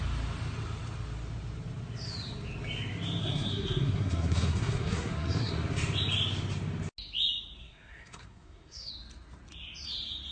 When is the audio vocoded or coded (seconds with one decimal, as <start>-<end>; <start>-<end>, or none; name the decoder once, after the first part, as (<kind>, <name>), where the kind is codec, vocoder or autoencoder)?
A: 3.2-5.5 (codec, SNAC); 7.6-8.9